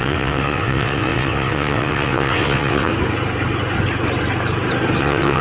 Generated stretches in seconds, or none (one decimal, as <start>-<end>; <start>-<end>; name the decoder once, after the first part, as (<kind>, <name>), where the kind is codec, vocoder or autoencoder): 0.0-2.9 (vocoder, WaveNeXt); 5.0-5.4